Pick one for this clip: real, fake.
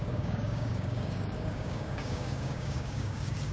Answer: fake